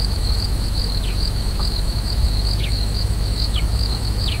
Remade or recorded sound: remade